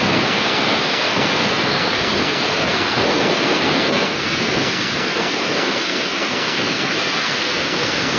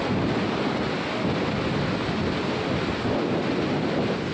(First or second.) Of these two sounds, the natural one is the second